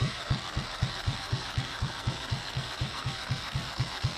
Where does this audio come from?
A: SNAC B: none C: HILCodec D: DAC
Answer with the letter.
A